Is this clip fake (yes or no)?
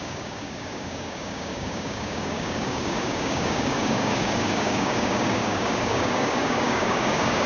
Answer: yes